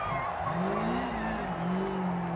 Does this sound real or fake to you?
real